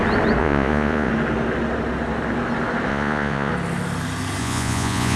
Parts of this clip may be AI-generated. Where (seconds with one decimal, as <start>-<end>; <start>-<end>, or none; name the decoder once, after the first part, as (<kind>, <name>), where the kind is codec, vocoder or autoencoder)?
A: 0.4-1.1 (vocoder, Vocos); 2.9-3.5; 4.4-5.2